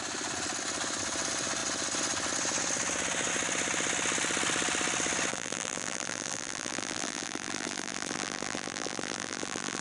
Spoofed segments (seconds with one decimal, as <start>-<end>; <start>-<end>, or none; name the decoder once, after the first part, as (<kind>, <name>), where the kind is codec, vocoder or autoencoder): 5.3-9.8 (vocoder, BigVGAN v2)